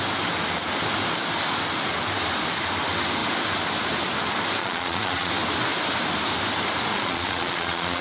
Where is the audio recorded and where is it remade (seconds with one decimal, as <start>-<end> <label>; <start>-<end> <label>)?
0.0-4.6 recorded; 4.6-5.3 remade; 5.3-6.9 recorded; 6.9-8.0 remade